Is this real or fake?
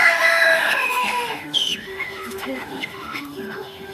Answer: fake